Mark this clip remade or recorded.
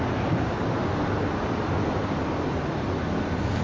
recorded